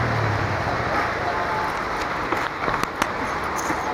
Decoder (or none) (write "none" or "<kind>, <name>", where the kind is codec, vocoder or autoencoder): none